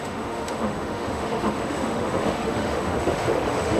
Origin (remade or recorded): remade